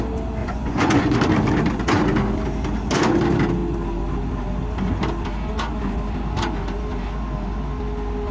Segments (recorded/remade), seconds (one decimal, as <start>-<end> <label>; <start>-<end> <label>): 0.0-0.4 recorded; 0.4-1.1 remade; 1.1-8.3 recorded